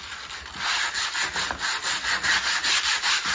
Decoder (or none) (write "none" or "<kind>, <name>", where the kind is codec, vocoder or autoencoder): none